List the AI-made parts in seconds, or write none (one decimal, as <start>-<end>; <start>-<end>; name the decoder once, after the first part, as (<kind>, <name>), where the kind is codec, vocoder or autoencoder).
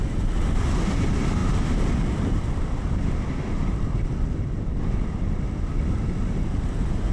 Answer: 0.0-7.1 (vocoder, BigVGAN v2)